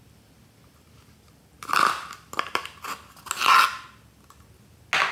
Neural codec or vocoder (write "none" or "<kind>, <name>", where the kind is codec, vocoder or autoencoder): none